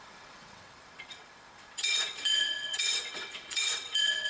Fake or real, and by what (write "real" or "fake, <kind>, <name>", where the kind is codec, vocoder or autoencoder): fake, vocoder, WaveNeXt